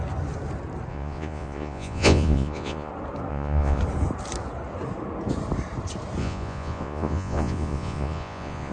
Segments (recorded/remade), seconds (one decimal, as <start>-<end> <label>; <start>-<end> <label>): 0.0-0.9 recorded; 0.9-2.9 remade; 2.9-3.3 recorded; 3.3-3.8 remade; 3.8-6.2 recorded; 6.2-8.7 remade